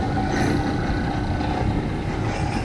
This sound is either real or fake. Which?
real